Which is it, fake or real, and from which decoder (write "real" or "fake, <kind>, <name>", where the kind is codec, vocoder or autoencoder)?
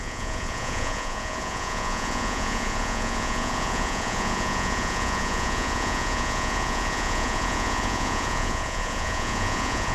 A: fake, vocoder, Vocos